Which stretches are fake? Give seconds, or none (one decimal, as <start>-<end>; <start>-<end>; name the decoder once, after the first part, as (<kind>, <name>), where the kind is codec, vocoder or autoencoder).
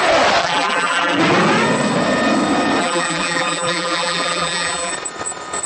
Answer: 0.4-1.2 (vocoder, BigVGAN v2); 2.8-4.9